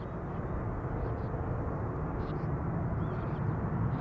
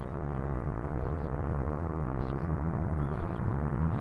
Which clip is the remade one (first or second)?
second